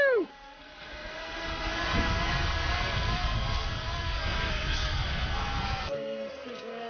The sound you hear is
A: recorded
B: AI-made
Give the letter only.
B